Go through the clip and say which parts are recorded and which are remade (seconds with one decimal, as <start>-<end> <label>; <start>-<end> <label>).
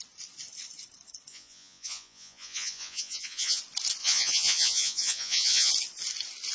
0.0-1.3 recorded; 1.3-3.6 remade; 3.6-4.0 recorded; 4.0-5.7 remade; 5.7-6.5 recorded